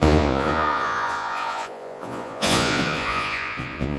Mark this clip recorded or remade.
remade